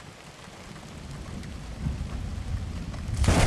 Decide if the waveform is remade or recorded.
recorded